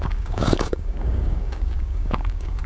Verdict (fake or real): fake